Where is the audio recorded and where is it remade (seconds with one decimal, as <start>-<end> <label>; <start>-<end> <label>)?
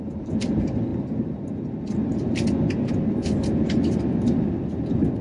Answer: 0.0-5.2 recorded